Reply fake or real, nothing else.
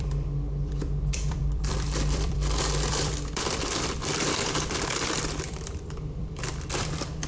fake